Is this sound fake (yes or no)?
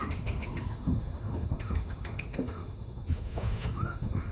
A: yes